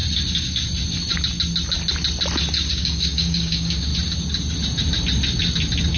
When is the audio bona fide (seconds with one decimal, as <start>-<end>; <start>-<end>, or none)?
0.0-2.7; 3.9-6.0